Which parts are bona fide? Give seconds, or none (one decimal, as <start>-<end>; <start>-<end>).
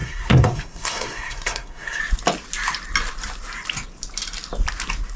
2.0-5.2